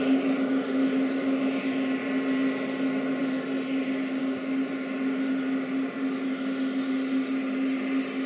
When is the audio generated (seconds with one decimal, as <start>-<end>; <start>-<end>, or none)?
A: none